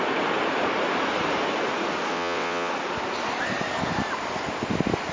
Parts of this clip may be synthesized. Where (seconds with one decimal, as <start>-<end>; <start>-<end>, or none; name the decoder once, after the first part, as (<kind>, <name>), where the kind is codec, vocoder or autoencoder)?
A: 2.1-2.7 (vocoder, WaveNeXt)